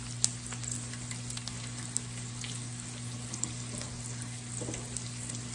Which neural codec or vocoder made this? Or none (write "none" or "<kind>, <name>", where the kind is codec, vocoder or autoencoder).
none